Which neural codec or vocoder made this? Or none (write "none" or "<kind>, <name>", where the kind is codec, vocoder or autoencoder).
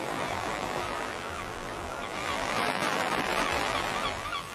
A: vocoder, BigVGAN v2